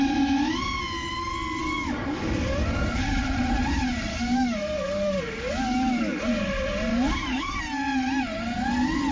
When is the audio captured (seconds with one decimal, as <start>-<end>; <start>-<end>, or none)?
0.0-1.6; 3.0-4.1; 6.2-6.9; 7.6-9.1